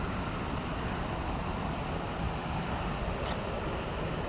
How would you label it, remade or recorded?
recorded